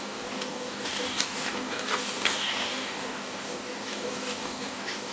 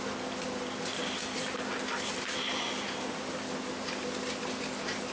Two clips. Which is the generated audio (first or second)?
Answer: first